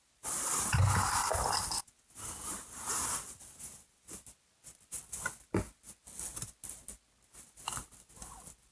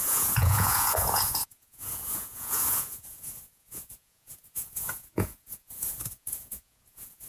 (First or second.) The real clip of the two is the first